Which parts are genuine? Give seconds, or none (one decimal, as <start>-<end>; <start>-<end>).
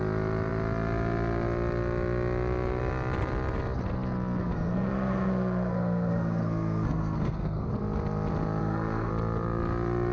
0.0-4.4; 7.7-8.6; 9.1-10.1